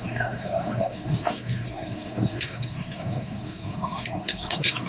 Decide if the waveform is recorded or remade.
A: remade